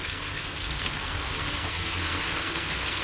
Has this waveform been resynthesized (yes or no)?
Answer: yes